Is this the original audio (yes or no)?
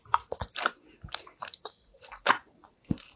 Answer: no